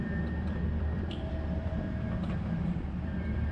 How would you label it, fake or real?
fake